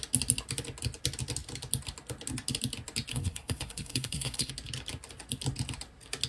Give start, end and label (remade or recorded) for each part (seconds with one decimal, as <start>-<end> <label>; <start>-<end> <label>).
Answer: 0.0-3.1 recorded; 3.1-4.5 remade; 4.5-6.3 recorded